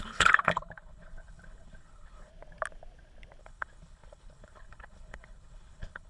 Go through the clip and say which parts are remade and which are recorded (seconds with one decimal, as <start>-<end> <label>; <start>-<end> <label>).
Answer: 0.0-2.3 remade; 2.3-3.4 recorded; 3.4-6.1 remade